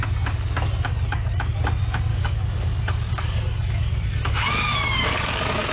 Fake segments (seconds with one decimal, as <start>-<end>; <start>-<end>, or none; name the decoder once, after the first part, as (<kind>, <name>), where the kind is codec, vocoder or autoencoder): 2.1-5.7 (codec, DAC)